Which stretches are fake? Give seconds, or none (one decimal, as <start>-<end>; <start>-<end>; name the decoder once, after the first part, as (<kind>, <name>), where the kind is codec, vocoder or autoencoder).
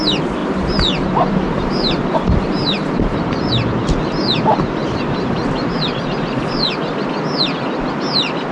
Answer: 0.4-3.5 (vocoder, BigVGAN v2); 4.8-7.0